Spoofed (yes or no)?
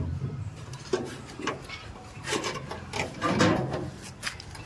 no